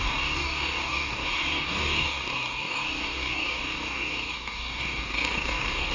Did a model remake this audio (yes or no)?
yes